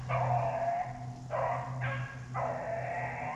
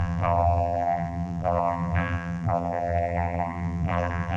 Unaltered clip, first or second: first